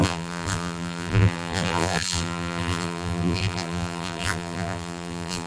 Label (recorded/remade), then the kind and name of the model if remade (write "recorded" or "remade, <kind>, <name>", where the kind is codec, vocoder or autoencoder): remade, vocoder, BigVGAN v2